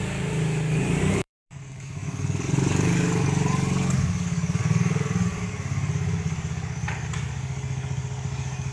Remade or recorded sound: remade